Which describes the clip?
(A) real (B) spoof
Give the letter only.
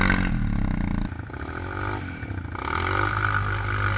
A